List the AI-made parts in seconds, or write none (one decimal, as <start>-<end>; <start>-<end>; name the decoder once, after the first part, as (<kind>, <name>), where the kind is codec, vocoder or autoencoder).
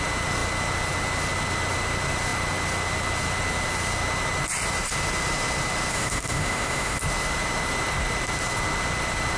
5.9-7.0 (autoencoder, DAC-VAE)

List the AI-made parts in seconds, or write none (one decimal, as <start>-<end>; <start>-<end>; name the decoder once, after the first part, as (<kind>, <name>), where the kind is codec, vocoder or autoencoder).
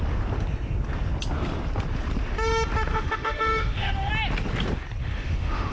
2.9-4.1 (autoencoder, DAC-VAE); 5.0-5.7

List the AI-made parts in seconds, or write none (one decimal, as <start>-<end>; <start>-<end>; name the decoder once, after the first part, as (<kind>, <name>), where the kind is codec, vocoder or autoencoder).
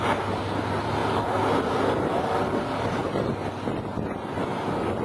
none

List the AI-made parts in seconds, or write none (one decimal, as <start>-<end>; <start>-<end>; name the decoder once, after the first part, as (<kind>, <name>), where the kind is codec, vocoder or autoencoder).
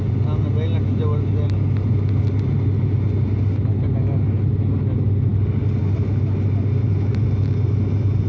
none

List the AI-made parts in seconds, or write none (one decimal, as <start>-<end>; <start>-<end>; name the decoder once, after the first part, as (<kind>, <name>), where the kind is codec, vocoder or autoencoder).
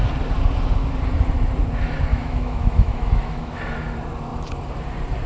2.1-3.6 (autoencoder, DAC-VAE)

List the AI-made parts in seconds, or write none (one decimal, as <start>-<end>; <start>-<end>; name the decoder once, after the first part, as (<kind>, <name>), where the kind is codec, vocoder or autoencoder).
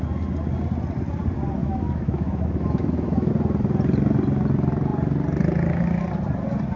1.6-3.3 (autoencoder, DAC-VAE)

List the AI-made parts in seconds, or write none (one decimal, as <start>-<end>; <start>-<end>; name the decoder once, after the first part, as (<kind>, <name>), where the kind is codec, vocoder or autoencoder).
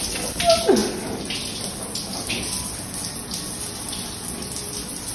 none